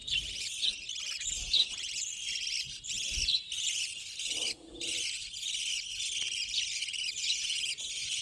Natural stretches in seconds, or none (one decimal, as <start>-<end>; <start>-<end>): 0.0-7.2